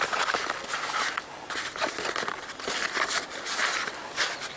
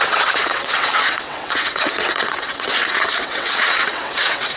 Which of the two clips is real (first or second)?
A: first